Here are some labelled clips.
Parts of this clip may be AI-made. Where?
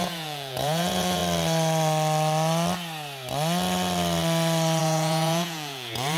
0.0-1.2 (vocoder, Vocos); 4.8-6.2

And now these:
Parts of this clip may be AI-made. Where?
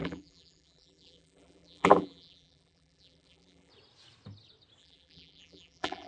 0.0-3.7 (vocoder, BigVGAN v2); 4.8-6.1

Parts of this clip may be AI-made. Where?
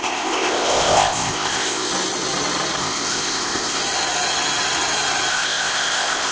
0.0-1.9 (codec, ZipCodec); 2.8-3.8; 5.3-6.3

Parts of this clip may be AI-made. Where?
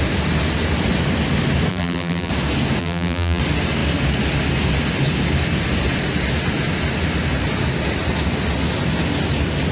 1.7-2.3 (vocoder, BigVGAN v2); 2.8-3.4